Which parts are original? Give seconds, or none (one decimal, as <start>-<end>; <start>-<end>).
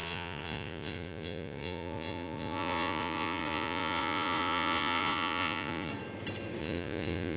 5.9-6.6